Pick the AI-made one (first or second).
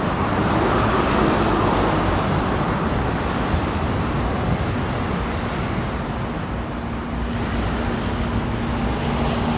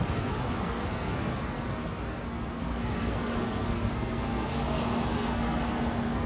second